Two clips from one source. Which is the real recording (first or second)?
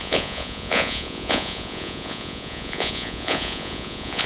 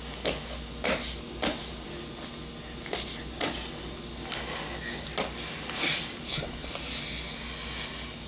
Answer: second